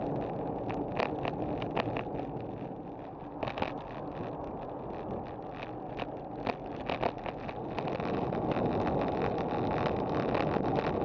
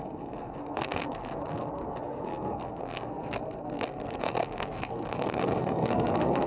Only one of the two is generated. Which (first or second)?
second